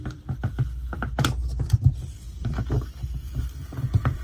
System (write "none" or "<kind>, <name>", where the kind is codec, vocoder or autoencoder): vocoder, BigVGAN v2